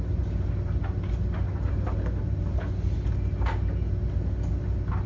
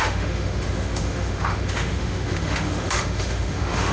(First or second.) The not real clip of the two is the second